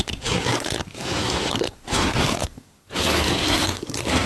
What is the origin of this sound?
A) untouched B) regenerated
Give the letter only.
B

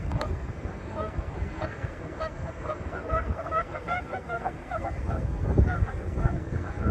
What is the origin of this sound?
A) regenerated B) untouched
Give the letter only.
A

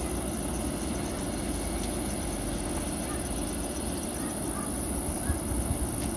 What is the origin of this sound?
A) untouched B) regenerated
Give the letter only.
A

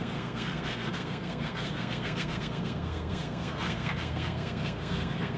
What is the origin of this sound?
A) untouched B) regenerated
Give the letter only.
B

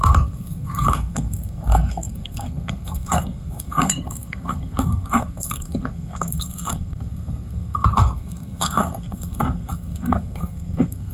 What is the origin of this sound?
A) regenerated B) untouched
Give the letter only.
A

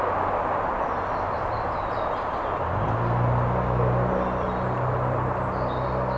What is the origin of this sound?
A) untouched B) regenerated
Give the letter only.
A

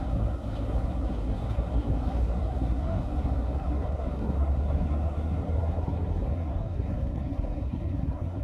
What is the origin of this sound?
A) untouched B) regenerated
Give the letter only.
B